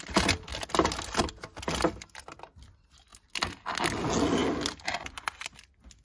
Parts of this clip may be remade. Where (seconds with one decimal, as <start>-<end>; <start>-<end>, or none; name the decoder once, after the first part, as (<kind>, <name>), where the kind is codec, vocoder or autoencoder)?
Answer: none